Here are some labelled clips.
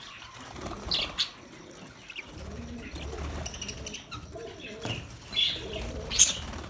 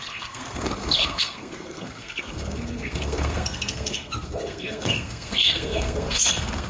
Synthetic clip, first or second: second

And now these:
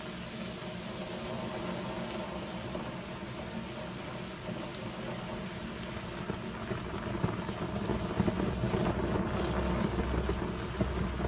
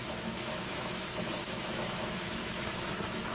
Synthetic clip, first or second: second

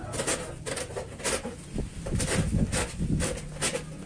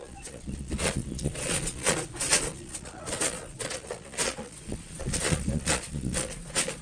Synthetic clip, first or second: second